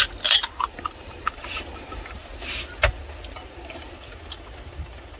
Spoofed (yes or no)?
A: no